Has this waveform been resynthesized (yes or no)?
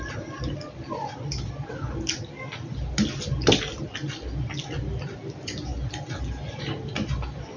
no